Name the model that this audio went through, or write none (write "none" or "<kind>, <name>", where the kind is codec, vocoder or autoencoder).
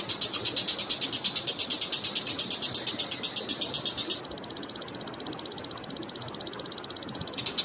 none